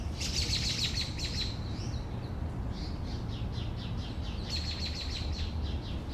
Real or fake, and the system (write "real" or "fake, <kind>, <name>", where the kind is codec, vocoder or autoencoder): real